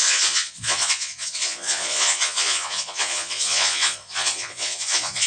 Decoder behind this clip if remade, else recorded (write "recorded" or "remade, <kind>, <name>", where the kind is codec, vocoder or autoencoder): remade, vocoder, Vocos